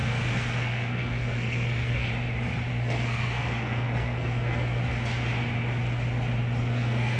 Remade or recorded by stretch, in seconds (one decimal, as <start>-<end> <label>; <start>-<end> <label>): 0.0-2.1 remade; 2.1-2.7 recorded; 2.7-4.8 remade; 4.8-6.6 recorded; 6.6-7.2 remade